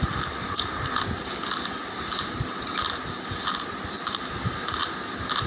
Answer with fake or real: real